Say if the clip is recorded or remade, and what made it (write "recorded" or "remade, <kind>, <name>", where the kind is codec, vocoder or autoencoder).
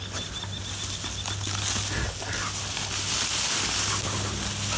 recorded